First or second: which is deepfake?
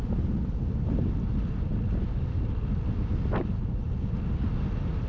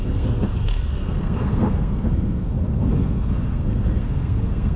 second